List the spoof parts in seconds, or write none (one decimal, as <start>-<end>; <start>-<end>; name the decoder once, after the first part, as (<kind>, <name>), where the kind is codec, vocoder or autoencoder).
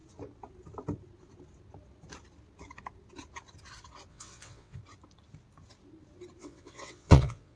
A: 4.1-4.8 (vocoder, WaveNeXt); 6.4-7.6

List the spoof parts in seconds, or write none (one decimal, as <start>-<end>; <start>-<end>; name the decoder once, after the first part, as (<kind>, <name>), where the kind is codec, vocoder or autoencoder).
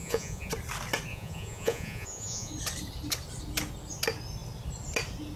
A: 0.0-0.5 (vocoder, Vocos); 1.1-2.5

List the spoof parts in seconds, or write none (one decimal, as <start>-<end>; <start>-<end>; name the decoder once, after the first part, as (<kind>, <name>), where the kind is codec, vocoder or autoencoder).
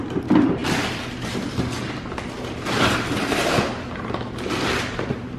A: none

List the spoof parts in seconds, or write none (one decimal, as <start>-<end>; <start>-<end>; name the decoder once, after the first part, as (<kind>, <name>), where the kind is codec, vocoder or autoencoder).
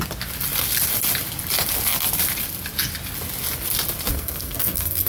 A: 4.1-5.1 (codec, SNAC)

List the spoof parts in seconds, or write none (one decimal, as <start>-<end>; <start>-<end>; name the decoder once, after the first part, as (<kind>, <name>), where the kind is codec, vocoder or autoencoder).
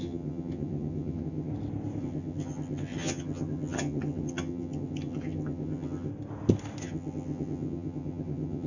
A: 0.0-1.5 (vocoder, HiFi-GAN); 2.0-6.1; 6.8-8.7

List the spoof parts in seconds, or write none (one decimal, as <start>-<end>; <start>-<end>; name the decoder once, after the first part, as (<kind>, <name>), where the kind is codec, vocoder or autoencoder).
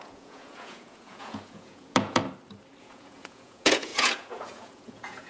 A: 0.0-2.2 (vocoder, Vocos); 2.8-5.3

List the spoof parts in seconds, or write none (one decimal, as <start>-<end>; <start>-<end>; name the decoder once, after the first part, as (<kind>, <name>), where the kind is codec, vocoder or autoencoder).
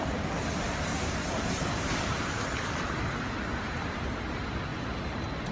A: 0.9-4.2 (vocoder, BigVGAN v2); 4.7-5.5